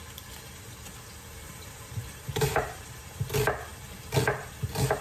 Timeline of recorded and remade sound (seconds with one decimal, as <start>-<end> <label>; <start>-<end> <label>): 0.0-1.4 recorded; 1.4-3.1 remade; 3.1-5.0 recorded